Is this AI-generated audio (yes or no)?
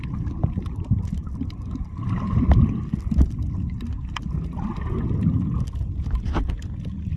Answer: no